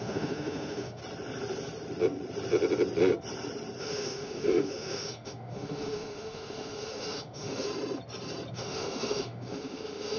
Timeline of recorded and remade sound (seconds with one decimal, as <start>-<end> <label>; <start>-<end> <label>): 0.0-1.0 remade; 1.0-3.8 recorded; 3.8-7.7 remade; 7.7-8.5 recorded; 8.5-10.2 remade